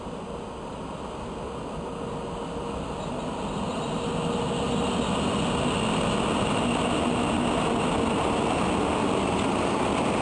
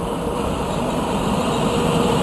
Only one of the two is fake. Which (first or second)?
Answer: second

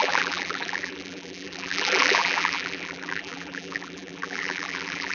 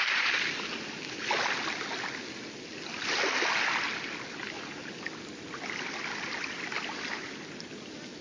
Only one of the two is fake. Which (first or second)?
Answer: first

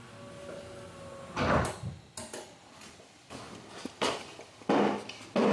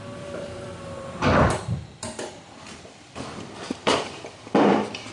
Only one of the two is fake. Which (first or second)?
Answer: second